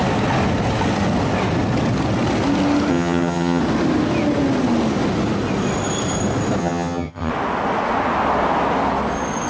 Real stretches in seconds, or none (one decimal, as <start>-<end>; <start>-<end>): 0.0-2.9; 3.6-6.6; 7.3-9.5